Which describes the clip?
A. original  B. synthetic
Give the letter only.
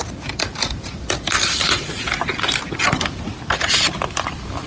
A